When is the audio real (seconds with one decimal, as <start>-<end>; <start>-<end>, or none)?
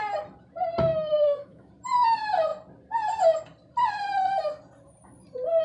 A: 0.0-0.9; 1.7-5.6